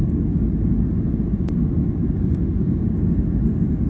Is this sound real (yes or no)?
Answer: yes